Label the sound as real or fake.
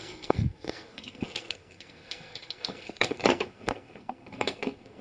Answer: fake